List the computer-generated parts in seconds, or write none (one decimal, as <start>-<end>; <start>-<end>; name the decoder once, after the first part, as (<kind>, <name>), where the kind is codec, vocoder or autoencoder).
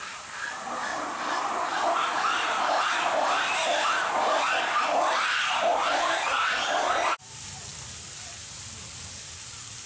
0.0-9.9 (vocoder, BigVGAN v2)